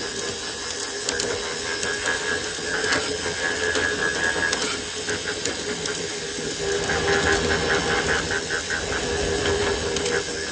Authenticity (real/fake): real